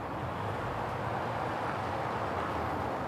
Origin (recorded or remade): recorded